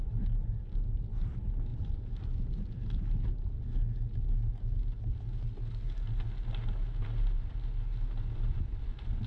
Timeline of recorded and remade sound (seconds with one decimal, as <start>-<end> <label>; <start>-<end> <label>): 0.0-9.3 recorded